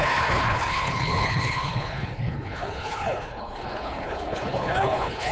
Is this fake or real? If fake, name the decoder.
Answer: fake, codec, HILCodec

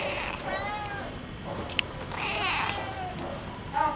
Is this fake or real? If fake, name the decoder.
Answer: real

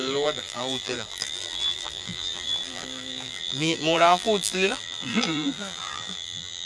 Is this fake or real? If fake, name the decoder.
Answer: fake, vocoder, BigVGAN v2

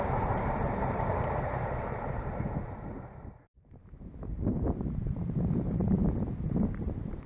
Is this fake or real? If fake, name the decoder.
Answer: fake, vocoder, BigVGAN v2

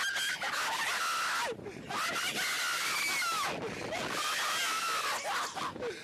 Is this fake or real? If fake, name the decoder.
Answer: real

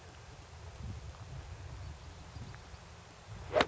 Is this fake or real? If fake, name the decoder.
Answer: real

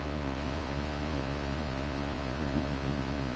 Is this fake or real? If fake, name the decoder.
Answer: fake, vocoder, Vocos